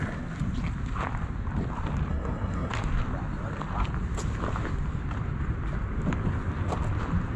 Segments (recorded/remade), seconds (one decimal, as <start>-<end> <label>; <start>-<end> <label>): 0.0-2.1 recorded; 2.1-2.7 remade; 2.7-7.4 recorded